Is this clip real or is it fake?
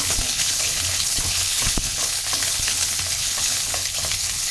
fake